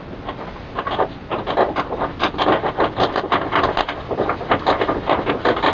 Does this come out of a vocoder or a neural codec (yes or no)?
no